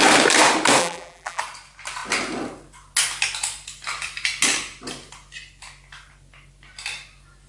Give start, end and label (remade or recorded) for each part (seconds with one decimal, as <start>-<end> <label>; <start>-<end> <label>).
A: 0.0-0.8 recorded; 0.8-1.4 remade; 1.4-7.5 recorded